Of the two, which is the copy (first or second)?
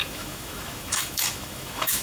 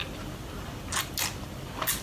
first